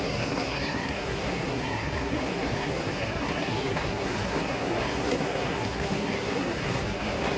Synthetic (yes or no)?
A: yes